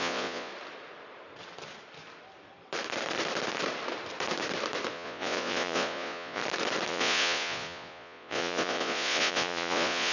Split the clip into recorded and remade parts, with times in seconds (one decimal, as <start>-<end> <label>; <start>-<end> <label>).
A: 0.0-0.5 remade; 0.5-4.9 recorded; 4.9-6.4 remade; 6.4-6.9 recorded; 6.9-10.1 remade